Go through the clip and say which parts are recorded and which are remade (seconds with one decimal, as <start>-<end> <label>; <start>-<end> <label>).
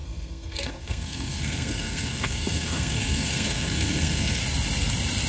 0.0-4.4 remade; 4.4-5.3 recorded